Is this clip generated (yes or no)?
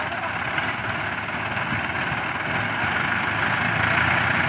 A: no